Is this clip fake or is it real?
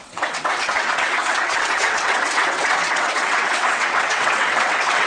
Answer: fake